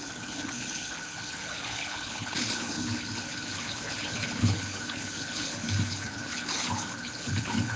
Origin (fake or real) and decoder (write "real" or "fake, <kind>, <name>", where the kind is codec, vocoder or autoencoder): fake, codec, HILCodec